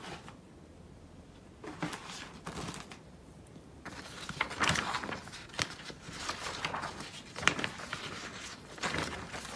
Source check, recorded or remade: recorded